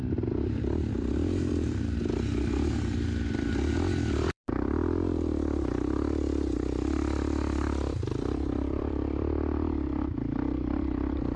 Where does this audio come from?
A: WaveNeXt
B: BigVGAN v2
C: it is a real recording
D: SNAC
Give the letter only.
B